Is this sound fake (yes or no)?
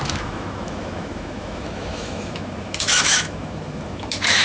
yes